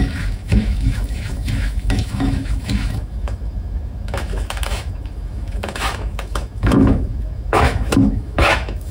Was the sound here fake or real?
fake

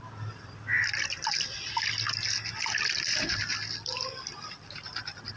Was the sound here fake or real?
real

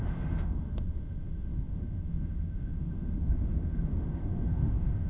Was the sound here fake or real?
fake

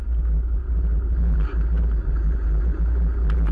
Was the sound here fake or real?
real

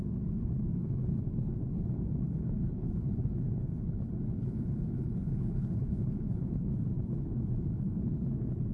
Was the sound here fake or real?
fake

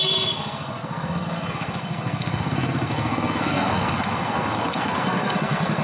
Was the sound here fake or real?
fake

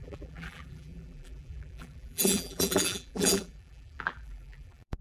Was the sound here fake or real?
fake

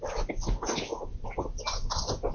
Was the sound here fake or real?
real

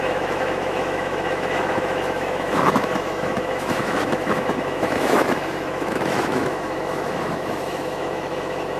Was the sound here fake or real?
fake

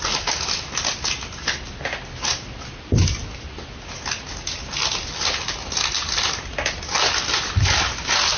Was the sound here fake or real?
real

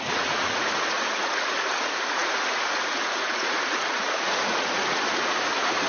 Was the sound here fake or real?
fake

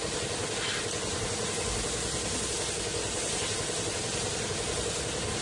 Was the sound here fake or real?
real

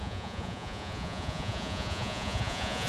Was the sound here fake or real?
fake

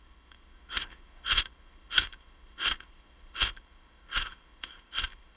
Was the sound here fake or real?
fake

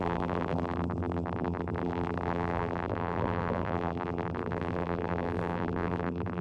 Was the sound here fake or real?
fake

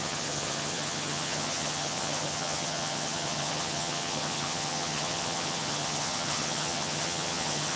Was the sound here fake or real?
fake